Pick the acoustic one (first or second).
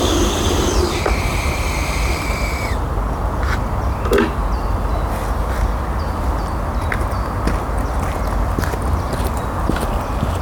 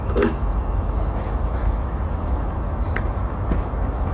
first